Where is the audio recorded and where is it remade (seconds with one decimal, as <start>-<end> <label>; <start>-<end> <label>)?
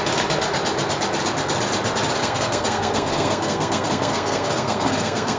0.0-2.2 recorded; 2.2-5.4 remade